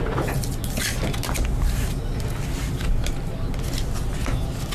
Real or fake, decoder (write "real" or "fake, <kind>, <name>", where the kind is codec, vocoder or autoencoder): real